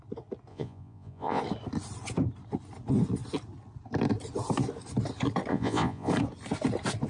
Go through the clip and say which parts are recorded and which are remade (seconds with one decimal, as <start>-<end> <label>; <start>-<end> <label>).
0.0-0.5 recorded; 0.5-1.4 remade; 1.4-5.5 recorded; 5.5-6.1 remade; 6.1-7.1 recorded

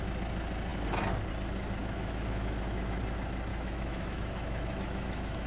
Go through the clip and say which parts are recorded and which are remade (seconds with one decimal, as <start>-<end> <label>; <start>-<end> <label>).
0.0-1.8 recorded; 1.8-3.0 remade; 3.0-3.5 recorded; 3.5-5.5 remade

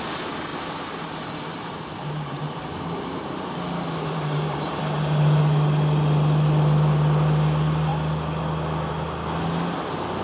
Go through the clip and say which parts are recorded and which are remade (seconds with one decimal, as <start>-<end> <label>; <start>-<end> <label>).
0.0-0.5 recorded; 0.5-4.8 remade; 4.8-10.2 recorded

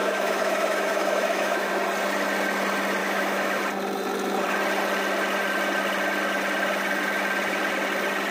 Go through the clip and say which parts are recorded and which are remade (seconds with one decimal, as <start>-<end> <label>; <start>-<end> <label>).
0.0-1.7 remade; 1.7-3.0 recorded; 3.0-3.6 remade; 3.6-8.3 recorded